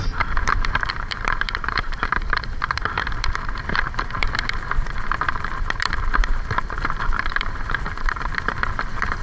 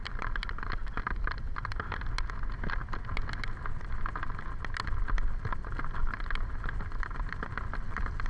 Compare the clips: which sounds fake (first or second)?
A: first